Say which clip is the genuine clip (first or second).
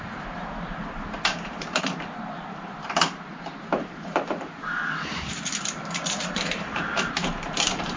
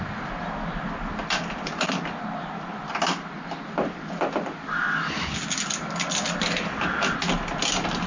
second